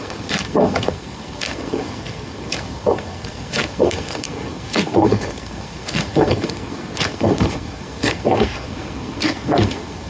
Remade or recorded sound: remade